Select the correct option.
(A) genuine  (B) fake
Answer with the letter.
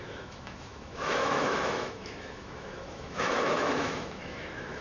B